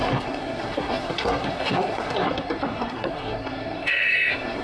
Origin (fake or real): fake